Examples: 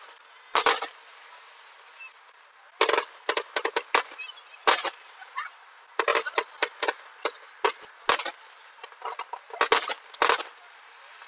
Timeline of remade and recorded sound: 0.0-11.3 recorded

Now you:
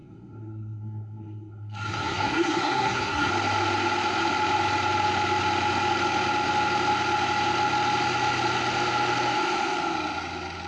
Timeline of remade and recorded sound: 0.0-3.3 remade; 3.3-10.7 recorded

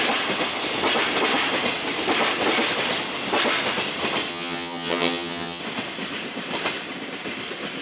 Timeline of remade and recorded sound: 0.0-4.3 recorded; 4.3-5.6 remade; 5.6-7.8 recorded

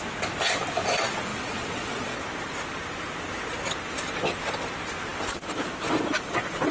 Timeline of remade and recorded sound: 0.0-1.3 recorded; 1.3-2.2 remade; 2.2-6.7 recorded